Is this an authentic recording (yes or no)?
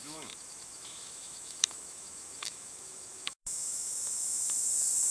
no